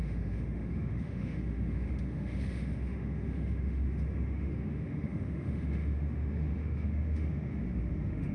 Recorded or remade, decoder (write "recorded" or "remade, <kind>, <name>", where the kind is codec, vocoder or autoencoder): remade, autoencoder, DAC-VAE